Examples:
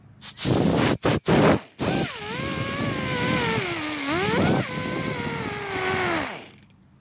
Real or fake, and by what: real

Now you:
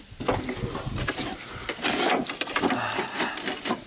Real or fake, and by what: real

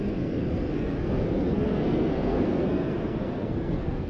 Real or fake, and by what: fake, codec, SNAC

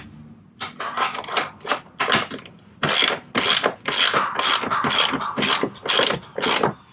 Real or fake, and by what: real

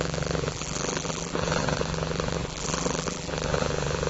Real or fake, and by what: fake, vocoder, BigVGAN v2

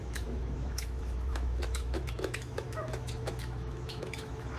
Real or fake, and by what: fake, autoencoder, DAC-VAE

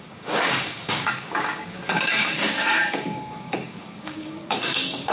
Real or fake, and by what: fake, codec, DAC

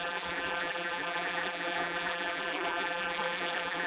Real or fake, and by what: fake, vocoder, BigVGAN v2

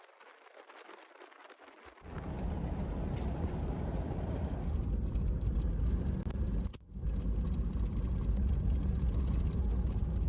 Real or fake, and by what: real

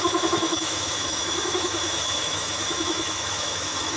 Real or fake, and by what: fake, autoencoder, DAC-VAE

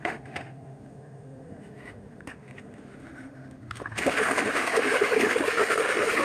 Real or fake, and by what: fake, autoencoder, DAC-VAE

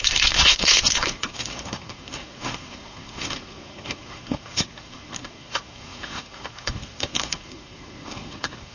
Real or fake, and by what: fake, codec, SNAC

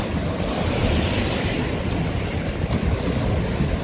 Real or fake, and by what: real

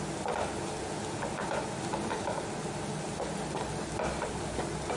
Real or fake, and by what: real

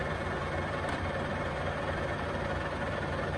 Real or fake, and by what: fake, vocoder, BigVGAN v2